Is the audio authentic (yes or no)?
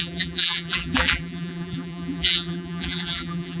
no